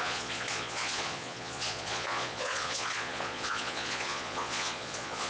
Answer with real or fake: fake